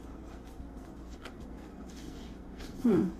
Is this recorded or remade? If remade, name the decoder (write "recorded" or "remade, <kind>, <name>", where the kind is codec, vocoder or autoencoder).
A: remade, codec, SNAC